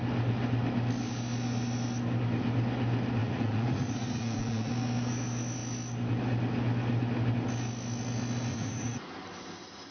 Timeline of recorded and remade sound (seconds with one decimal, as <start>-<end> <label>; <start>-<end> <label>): 0.0-3.2 recorded; 3.2-4.7 remade; 4.7-8.5 recorded; 8.5-9.1 remade; 9.1-9.9 recorded